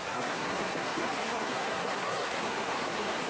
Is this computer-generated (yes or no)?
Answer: yes